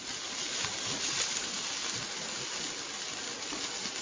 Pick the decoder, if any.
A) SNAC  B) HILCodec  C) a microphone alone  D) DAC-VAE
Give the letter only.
C